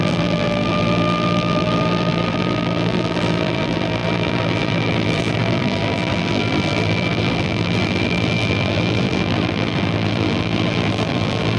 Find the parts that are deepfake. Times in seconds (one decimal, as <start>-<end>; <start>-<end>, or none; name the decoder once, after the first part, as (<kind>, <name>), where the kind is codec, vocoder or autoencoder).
0.0-11.6 (vocoder, BigVGAN v2)